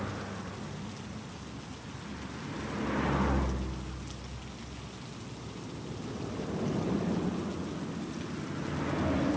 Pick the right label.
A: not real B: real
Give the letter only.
B